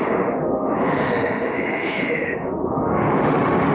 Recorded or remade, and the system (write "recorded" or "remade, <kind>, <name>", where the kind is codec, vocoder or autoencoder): remade, autoencoder, DAC-VAE